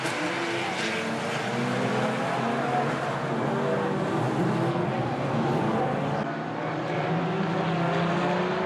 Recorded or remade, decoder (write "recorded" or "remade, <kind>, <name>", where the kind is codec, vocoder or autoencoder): recorded